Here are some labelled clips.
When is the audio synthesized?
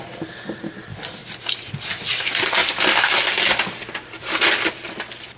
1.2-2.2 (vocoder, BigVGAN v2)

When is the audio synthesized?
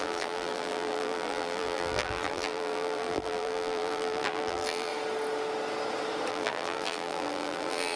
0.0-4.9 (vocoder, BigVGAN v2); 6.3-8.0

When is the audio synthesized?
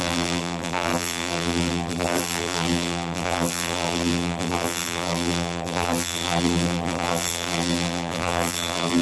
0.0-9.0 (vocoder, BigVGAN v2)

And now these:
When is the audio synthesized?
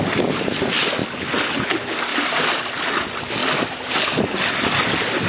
1.0-1.6 (vocoder, BigVGAN v2); 2.1-2.9; 3.4-4.4